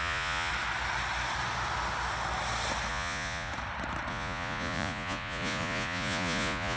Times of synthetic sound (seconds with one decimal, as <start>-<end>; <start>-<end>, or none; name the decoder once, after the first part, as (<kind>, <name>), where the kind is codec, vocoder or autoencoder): 0.0-0.5 (vocoder, Vocos); 2.9-3.5; 4.1-6.8